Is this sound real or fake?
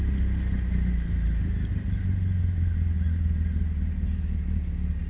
real